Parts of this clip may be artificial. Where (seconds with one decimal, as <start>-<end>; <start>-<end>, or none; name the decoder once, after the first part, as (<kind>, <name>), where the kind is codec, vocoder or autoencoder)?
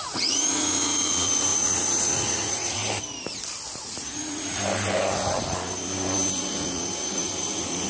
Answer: 0.0-2.8 (vocoder, Vocos); 3.8-4.6; 6.4-7.9